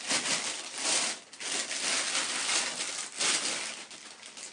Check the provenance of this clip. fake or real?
real